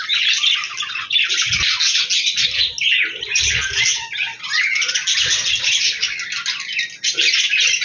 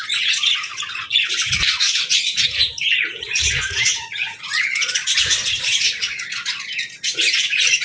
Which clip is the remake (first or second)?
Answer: second